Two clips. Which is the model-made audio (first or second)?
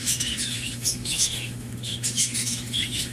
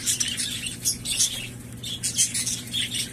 first